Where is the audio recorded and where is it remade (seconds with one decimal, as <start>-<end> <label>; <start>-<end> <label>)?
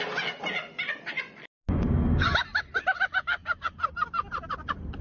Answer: 0.0-3.4 recorded; 3.4-4.5 remade; 4.5-5.0 recorded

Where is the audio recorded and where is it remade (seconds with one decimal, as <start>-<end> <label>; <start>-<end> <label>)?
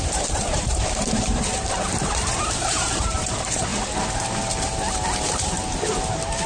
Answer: 0.0-3.7 remade; 3.7-6.5 recorded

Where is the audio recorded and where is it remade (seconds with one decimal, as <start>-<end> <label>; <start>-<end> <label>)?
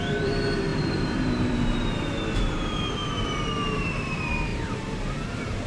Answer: 0.0-3.0 remade; 3.0-3.8 recorded; 3.8-5.7 remade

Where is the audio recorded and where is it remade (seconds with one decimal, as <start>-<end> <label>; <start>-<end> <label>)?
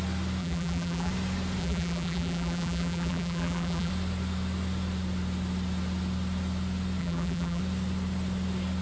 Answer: 0.0-0.4 recorded; 0.4-1.1 remade; 1.1-1.6 recorded; 1.6-3.9 remade; 3.9-7.0 recorded; 7.0-7.6 remade; 7.6-8.8 recorded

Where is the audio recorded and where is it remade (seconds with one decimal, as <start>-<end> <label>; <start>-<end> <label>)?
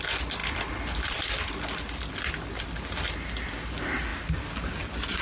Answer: 0.0-5.2 recorded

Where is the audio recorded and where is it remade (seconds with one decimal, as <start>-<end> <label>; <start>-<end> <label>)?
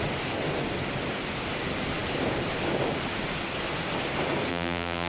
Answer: 0.0-4.5 recorded; 4.5-5.1 remade